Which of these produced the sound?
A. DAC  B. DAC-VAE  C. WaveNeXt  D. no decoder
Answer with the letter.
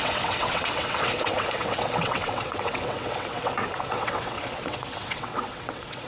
C